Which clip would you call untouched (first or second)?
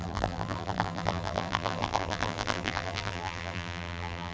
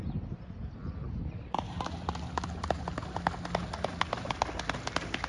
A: second